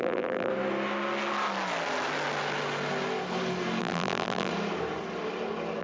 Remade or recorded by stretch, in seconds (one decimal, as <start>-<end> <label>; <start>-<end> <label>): 0.0-0.5 remade; 0.5-3.8 recorded; 3.8-4.5 remade; 4.5-5.8 recorded